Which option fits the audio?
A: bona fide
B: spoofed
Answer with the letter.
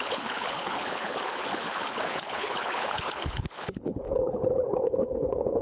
B